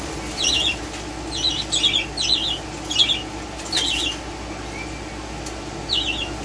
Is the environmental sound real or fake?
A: real